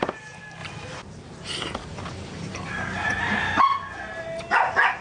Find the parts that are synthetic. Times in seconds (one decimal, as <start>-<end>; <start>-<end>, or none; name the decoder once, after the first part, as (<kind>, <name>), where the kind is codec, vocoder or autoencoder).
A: none